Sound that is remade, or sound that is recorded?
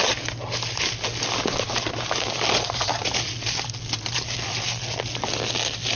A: recorded